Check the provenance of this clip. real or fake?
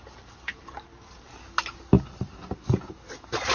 fake